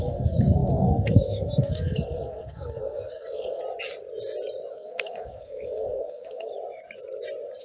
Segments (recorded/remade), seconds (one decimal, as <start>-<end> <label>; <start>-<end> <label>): 0.0-3.6 remade; 3.6-4.7 recorded; 4.7-6.5 remade; 6.5-7.6 recorded